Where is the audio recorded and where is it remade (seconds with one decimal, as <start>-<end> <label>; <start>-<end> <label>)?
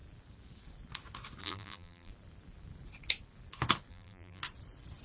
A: 0.0-1.4 recorded; 1.4-2.1 remade; 2.1-3.9 recorded; 3.9-4.4 remade; 4.4-5.0 recorded